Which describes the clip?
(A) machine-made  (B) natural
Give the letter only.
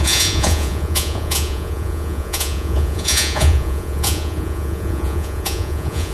A